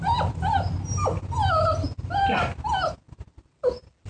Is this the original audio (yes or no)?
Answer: yes